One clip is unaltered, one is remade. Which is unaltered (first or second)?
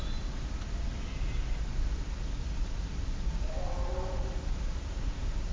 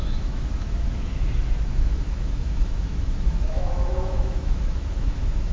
first